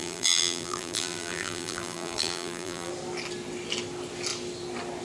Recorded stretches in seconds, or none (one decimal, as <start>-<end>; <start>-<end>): 2.9-5.0

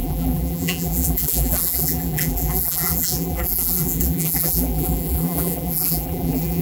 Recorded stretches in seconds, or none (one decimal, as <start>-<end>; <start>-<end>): none

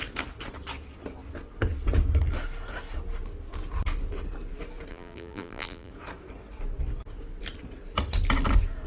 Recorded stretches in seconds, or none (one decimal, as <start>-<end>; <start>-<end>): 0.0-4.9; 5.9-8.9

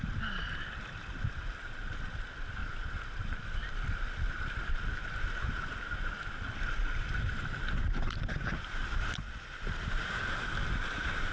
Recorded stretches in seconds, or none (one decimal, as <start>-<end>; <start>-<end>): 0.0-2.6; 5.0-11.3

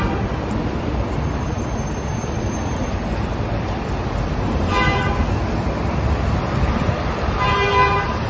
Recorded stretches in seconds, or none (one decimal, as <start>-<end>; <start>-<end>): 5.1-6.6

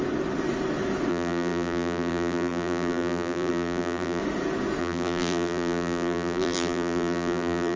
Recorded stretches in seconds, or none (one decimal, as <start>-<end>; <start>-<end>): 0.0-1.1; 4.2-4.8